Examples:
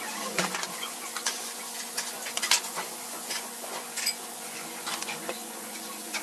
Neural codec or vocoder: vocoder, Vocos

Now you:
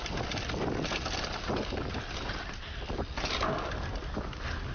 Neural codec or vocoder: none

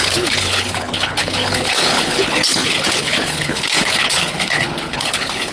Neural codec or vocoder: codec, HILCodec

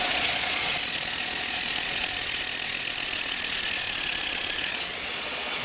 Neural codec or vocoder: vocoder, Vocos